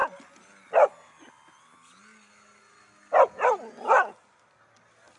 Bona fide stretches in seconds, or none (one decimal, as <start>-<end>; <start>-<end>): 0.0-5.2